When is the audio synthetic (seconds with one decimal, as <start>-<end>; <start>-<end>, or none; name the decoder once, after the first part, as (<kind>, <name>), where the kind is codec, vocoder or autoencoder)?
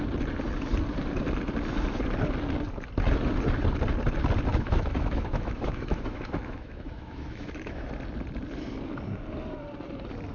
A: 4.5-7.9 (autoencoder, DAC-VAE)